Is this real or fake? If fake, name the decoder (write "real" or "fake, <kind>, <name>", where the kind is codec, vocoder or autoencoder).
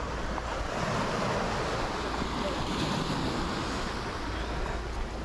real